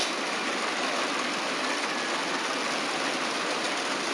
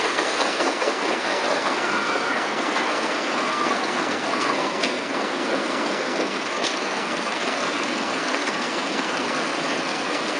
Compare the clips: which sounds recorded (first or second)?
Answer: first